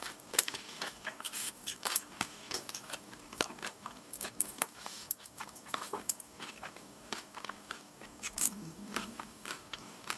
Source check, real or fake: fake